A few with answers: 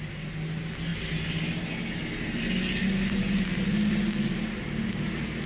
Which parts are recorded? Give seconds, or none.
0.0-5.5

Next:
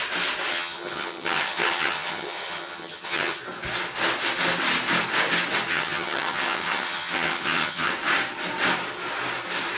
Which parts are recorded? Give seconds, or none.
0.0-0.5; 3.4-5.7; 7.9-9.8

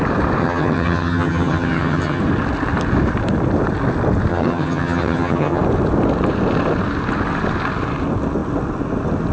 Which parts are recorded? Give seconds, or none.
0.0-0.4; 2.2-4.3; 5.6-9.3

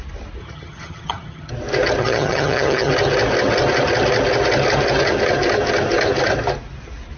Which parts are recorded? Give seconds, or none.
0.0-0.4; 1.5-2.0; 2.9-7.2